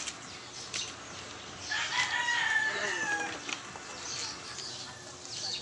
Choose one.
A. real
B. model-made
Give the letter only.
A